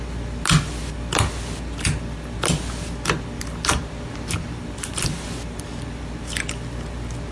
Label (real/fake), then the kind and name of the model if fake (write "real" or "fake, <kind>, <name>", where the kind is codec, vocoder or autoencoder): real